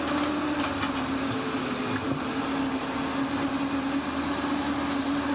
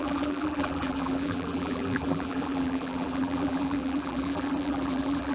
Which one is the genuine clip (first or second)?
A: first